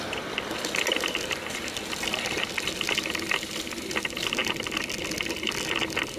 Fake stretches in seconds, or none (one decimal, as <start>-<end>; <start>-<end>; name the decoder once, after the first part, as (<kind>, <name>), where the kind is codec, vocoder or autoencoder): none